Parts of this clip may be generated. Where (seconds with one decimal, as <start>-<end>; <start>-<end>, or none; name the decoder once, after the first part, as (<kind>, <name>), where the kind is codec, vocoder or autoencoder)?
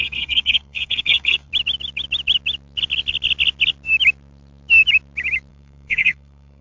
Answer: 0.0-1.5 (codec, SNAC); 5.5-6.6